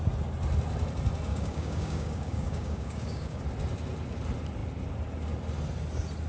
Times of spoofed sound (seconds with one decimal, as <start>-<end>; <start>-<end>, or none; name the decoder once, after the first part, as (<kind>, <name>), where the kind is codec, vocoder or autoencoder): 1.3-3.4 (codec, DAC)